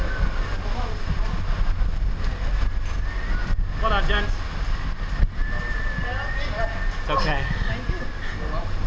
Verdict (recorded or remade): recorded